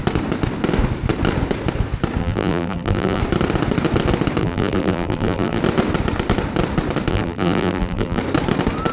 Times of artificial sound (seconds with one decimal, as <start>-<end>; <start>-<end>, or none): 2.2-3.2; 4.4-5.6; 7.1-8.2